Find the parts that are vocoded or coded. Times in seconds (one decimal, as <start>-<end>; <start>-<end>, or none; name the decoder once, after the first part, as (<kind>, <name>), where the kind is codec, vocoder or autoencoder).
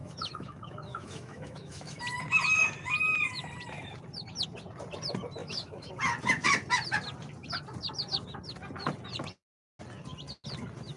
0.0-2.0 (autoencoder, DAC-VAE); 5.4-5.9